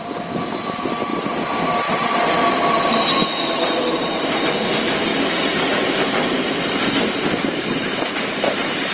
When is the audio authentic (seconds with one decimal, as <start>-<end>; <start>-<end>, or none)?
1.1-2.4